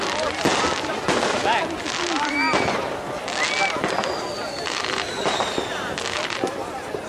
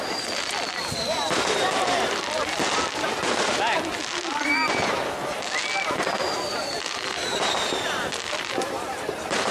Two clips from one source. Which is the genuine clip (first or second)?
first